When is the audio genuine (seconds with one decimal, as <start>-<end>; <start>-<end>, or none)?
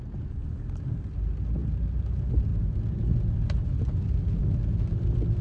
0.0-5.4